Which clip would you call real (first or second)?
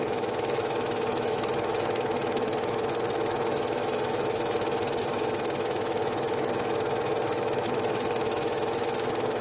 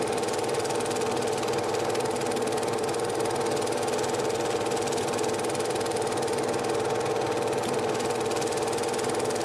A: second